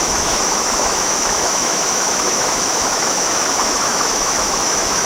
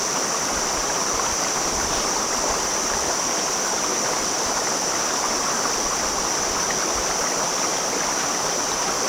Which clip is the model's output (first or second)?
first